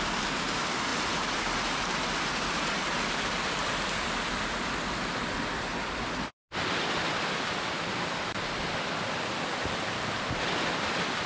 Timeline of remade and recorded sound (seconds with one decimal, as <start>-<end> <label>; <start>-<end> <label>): 0.0-11.3 recorded